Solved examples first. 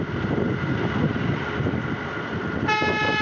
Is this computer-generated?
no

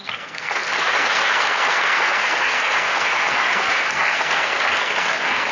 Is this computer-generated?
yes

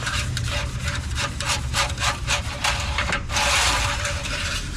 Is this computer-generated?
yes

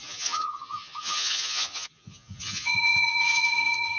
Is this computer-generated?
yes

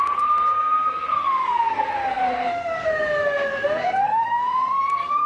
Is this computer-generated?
yes